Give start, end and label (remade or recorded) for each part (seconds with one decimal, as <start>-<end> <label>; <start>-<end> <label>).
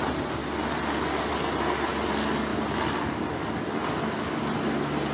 0.0-5.1 recorded